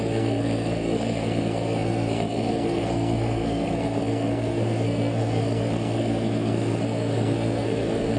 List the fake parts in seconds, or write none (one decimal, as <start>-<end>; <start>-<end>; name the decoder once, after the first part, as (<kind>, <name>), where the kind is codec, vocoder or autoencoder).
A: 0.0-8.2 (codec, SNAC)